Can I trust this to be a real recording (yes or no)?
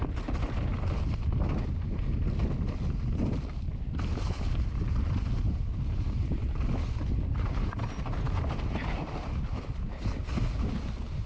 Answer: yes